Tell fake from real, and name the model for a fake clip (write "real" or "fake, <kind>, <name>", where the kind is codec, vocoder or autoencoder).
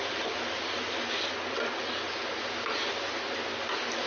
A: real